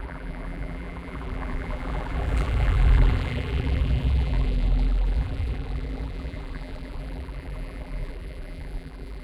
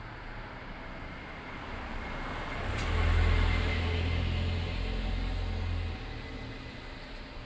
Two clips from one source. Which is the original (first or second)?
second